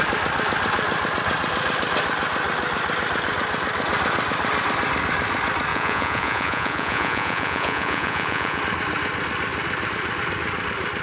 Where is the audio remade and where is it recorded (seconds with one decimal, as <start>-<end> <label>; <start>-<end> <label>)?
0.0-5.7 recorded; 5.7-8.6 remade; 8.6-11.0 recorded